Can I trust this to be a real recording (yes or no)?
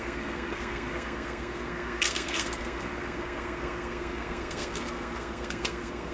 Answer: no